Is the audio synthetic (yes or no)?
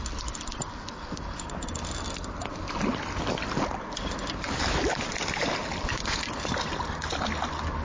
no